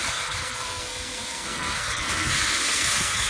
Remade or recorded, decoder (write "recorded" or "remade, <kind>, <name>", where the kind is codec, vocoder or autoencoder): remade, codec, SNAC